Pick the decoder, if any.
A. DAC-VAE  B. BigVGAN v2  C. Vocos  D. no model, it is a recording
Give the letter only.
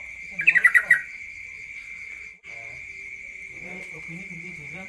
B